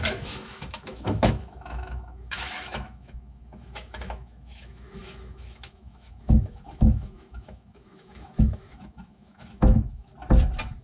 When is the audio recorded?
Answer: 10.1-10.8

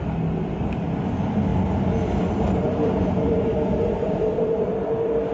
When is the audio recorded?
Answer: 0.0-1.5; 4.7-5.3

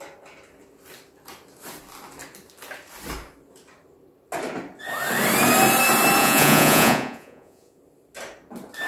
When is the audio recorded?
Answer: 0.0-6.2; 7.8-8.9